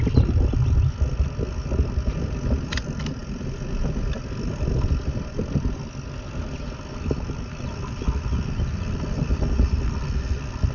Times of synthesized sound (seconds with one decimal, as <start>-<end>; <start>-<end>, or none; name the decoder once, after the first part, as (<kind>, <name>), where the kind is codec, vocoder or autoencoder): none